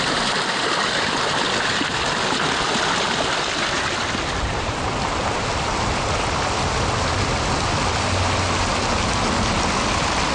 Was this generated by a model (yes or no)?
no